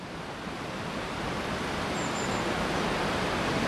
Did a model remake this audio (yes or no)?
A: no